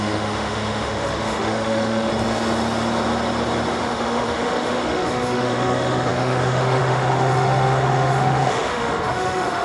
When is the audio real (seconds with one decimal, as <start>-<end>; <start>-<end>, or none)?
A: 2.1-3.8

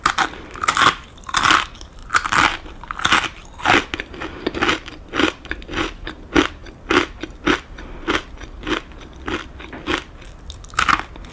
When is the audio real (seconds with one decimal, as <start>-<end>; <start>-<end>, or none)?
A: 0.0-11.3

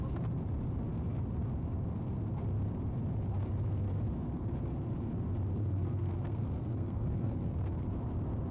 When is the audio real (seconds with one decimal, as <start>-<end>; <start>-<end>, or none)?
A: 0.0-5.6; 7.9-8.5

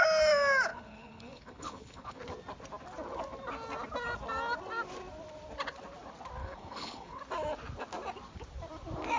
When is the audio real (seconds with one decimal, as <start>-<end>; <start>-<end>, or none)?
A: 0.0-0.7; 2.2-6.4; 7.2-9.2

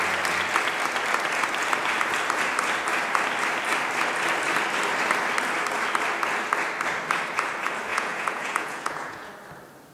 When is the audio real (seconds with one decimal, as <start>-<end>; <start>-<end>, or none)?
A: 0.0-7.9; 9.3-9.9

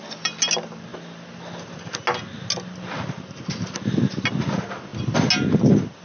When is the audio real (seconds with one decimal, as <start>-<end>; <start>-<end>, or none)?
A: 0.0-6.0

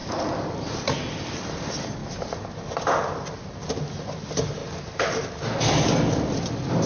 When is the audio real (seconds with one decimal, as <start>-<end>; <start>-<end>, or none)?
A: 0.0-6.9

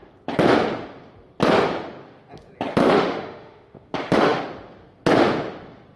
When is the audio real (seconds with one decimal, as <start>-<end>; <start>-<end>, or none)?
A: 0.0-2.8; 4.4-6.0